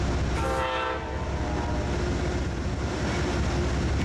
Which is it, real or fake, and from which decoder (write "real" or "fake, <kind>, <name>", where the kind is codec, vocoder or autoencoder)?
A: real